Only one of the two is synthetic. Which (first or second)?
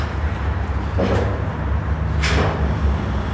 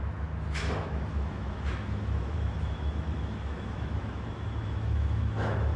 second